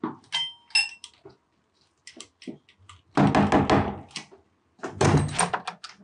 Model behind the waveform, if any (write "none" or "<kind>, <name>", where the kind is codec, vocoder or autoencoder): none